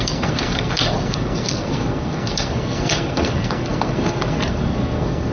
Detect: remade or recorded remade